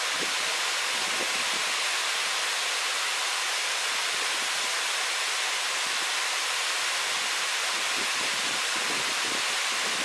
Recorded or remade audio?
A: recorded